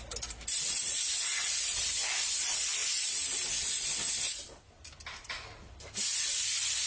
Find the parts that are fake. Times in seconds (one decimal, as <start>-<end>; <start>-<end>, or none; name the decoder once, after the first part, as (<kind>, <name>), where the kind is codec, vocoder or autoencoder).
none